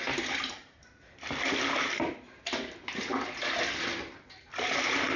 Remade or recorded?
recorded